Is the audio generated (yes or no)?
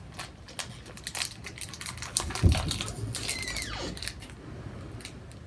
no